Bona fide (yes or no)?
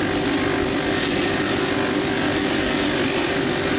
yes